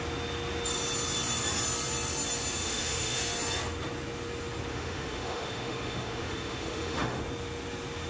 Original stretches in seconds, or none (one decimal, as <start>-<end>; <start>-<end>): 0.0-2.6; 3.2-4.7; 7.2-8.1